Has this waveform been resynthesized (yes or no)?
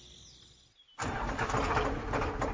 no